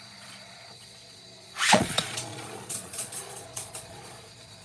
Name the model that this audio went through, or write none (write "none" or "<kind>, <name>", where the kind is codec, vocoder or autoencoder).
vocoder, Vocos